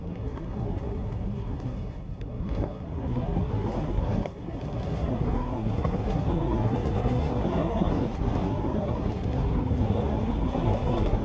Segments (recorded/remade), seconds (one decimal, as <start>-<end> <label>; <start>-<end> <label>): 0.0-11.2 remade